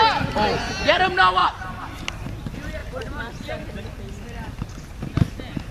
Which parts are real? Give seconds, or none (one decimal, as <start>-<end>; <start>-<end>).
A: 0.0-1.4; 2.1-2.8; 3.8-5.7